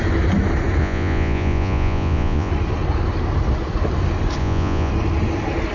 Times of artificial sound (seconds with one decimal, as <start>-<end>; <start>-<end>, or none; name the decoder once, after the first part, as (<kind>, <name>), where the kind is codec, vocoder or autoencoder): 0.8-2.5 (vocoder, Vocos); 4.4-4.9

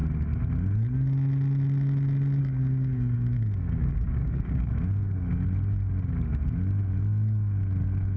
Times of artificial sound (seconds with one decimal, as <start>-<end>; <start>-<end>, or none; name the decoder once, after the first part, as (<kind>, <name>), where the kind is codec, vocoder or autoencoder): 2.4-5.3 (codec, DAC)

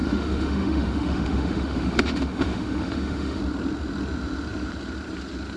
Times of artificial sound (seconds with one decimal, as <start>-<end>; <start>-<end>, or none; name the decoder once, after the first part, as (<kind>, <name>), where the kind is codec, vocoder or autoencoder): 0.0-3.4 (autoencoder, DAC-VAE)

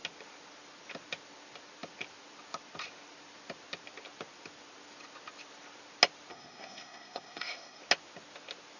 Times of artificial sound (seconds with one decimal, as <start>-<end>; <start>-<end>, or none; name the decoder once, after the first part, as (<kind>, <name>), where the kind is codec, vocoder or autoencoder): 6.3-7.8 (codec, SNAC)

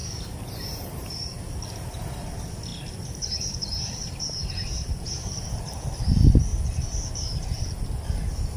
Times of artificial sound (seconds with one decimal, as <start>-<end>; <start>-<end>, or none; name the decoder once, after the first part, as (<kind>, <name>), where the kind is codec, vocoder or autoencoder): 0.0-1.6 (vocoder, BigVGAN v2); 2.7-5.8; 6.5-7.6

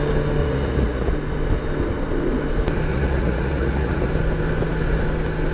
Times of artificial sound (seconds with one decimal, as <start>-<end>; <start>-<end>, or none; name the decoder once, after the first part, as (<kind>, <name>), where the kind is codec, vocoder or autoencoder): 0.4-1.1 (vocoder, Vocos); 2.9-4.1

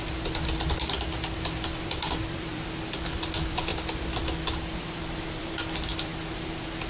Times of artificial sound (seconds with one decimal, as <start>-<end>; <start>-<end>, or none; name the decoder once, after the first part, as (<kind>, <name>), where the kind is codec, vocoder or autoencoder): 1.8-3.7 (vocoder, BigVGAN v2); 4.8-6.1

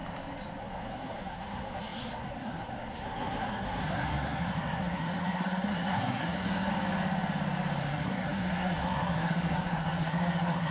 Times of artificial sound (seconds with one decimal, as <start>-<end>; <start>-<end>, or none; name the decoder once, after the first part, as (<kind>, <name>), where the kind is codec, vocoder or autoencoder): 0.6-6.7 (codec, SNAC); 7.8-10.7